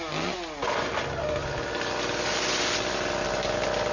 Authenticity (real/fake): real